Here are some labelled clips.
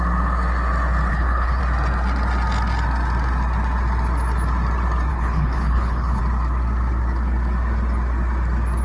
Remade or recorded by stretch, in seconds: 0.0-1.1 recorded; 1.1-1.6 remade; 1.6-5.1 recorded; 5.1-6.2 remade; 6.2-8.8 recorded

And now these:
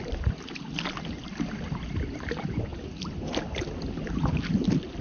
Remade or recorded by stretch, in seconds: 0.0-5.0 recorded